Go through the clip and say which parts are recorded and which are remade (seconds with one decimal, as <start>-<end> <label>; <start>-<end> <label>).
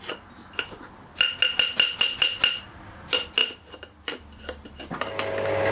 0.0-5.7 recorded